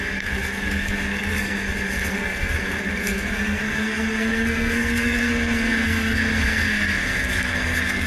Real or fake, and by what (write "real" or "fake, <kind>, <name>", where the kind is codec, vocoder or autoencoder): fake, codec, SNAC